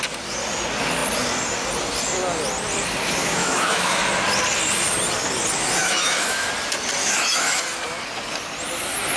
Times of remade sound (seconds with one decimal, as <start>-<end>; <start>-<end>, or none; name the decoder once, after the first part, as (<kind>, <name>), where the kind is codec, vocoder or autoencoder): 3.2-4.0 (autoencoder, DAC-VAE); 5.8-6.5; 7.0-7.6